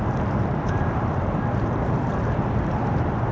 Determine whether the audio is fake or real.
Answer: fake